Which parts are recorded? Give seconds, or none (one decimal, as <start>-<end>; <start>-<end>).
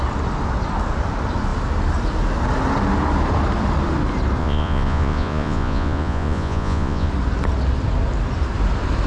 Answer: 0.0-4.4; 7.1-9.1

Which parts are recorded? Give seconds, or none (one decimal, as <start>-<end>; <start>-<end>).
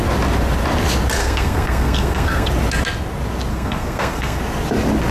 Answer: 0.0-1.2; 2.5-3.5; 4.4-5.1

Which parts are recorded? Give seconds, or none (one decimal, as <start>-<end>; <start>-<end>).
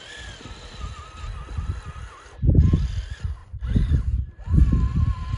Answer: 0.0-3.4; 5.0-5.4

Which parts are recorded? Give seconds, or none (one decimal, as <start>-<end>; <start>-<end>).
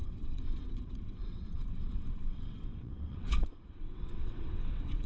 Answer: none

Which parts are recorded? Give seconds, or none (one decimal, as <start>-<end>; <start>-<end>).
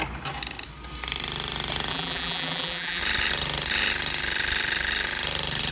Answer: 0.0-1.9; 3.0-5.7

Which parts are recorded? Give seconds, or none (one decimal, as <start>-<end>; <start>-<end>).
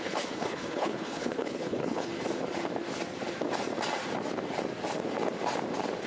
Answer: 2.1-6.1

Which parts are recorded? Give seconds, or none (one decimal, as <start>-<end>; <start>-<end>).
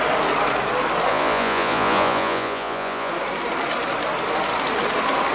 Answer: 0.0-1.1; 3.1-5.3